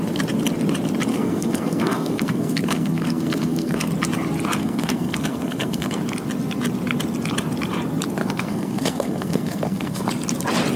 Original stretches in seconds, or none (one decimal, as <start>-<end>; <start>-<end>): 0.0-1.1; 3.9-4.6; 6.0-8.2; 10.1-10.8